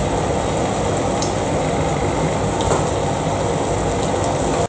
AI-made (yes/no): no